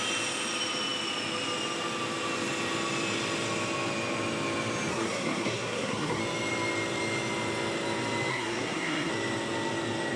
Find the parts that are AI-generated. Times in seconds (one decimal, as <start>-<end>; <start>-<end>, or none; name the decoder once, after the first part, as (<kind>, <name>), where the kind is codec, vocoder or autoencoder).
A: 4.9-6.2 (codec, SNAC); 8.3-9.1